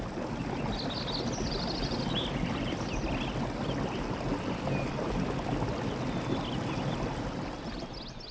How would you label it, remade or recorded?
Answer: recorded